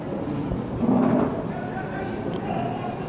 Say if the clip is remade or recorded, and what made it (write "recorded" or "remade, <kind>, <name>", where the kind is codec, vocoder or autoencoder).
recorded